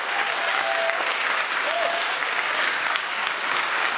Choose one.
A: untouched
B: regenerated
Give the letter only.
B